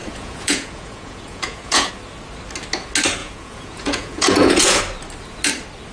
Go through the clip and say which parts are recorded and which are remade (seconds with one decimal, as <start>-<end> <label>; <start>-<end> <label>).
0.0-1.9 remade; 1.9-3.2 recorded; 3.2-4.8 remade; 4.8-5.9 recorded